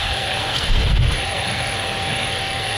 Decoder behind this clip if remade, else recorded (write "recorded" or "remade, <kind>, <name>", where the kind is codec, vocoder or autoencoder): remade, codec, SNAC